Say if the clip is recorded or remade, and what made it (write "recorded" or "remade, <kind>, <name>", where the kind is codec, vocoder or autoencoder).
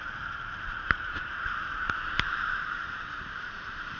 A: remade, vocoder, BigVGAN v2